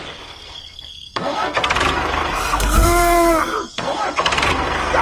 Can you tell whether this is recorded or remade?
remade